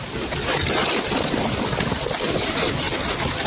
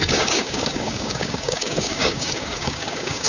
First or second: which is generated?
second